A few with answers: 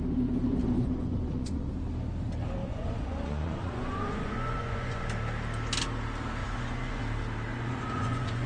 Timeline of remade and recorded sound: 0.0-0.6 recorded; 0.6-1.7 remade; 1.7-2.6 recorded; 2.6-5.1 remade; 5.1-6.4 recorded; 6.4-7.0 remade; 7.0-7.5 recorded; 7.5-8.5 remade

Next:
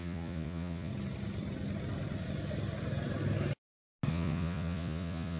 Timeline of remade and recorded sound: 0.0-0.9 remade; 0.9-4.1 recorded; 4.1-5.4 remade

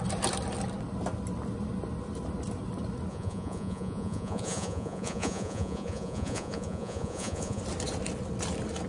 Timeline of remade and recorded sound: 0.0-3.1 recorded; 3.1-7.6 remade; 7.6-8.9 recorded

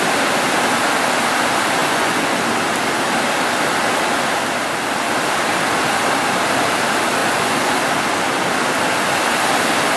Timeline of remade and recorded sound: 0.0-1.8 recorded; 1.8-2.4 remade; 2.4-7.2 recorded; 7.2-7.8 remade; 7.8-10.0 recorded